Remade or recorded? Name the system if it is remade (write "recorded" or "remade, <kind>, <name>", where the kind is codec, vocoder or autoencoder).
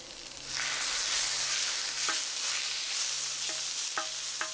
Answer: recorded